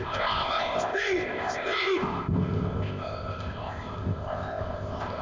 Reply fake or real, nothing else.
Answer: fake